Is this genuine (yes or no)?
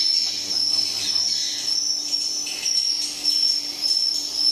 yes